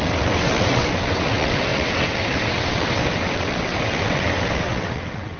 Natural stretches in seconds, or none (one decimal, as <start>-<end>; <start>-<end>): none